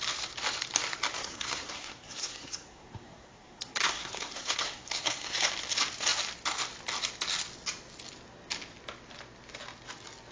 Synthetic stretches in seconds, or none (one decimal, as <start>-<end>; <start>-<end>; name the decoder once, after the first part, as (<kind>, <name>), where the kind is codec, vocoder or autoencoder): 1.2-5.5 (codec, SNAC)